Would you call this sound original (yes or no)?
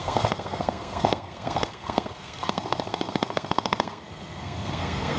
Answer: no